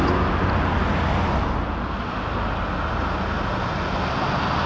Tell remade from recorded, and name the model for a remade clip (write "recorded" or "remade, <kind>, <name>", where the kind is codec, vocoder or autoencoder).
recorded